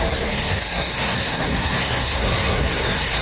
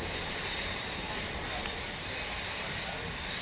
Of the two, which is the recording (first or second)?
second